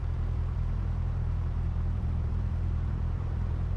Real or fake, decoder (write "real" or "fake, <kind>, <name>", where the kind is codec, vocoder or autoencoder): fake, vocoder, BigVGAN v2